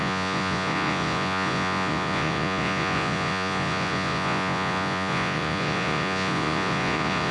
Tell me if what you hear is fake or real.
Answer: fake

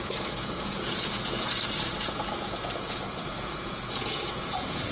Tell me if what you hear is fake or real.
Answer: fake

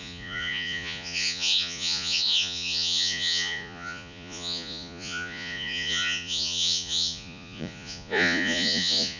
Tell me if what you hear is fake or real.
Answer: fake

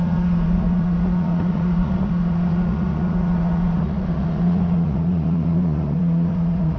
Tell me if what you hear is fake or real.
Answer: fake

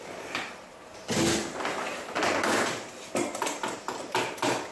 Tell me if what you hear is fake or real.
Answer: real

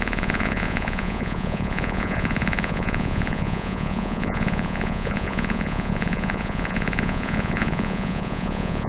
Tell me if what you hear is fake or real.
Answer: fake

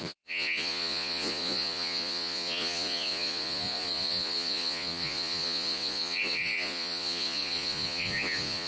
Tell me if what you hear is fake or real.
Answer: fake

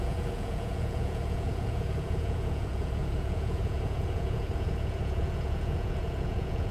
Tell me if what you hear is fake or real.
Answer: fake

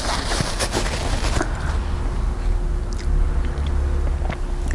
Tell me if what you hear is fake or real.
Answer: real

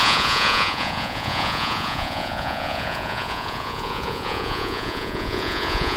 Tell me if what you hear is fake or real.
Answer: fake